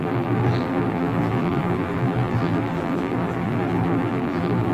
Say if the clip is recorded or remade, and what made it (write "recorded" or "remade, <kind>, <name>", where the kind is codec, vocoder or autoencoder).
remade, vocoder, BigVGAN v2